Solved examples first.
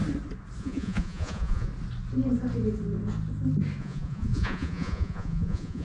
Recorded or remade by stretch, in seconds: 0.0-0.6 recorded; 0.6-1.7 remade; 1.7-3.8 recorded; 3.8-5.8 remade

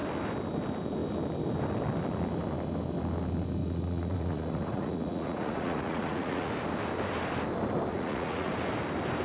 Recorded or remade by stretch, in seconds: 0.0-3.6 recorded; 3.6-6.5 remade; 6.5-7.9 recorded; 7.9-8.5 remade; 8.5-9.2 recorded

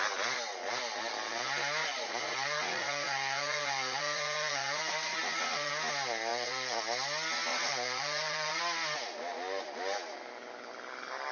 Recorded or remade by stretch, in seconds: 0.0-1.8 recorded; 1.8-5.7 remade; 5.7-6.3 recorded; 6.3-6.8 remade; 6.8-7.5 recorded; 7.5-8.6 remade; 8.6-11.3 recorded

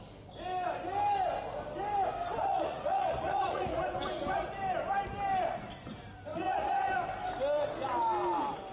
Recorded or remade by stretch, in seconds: 0.0-2.4 recorded; 2.4-3.8 remade; 3.8-6.3 recorded; 6.3-6.9 remade; 6.9-8.7 recorded

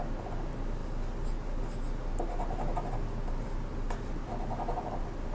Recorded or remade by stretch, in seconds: 0.0-5.3 recorded